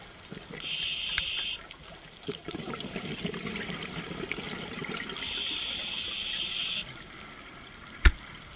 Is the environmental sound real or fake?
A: real